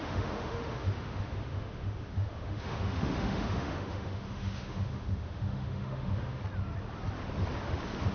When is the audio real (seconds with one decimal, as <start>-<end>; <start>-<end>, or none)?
6.4-8.1